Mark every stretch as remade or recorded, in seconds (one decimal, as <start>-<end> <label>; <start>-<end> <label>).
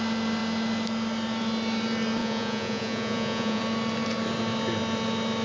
0.0-2.2 recorded; 2.2-3.6 remade; 3.6-5.4 recorded